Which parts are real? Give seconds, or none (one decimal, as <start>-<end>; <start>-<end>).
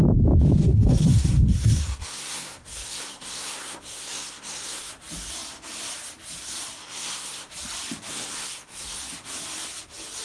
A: 0.0-0.6; 4.9-6.8; 7.5-8.1; 9.0-10.2